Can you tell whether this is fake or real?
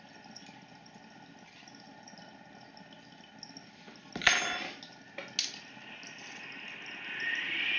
real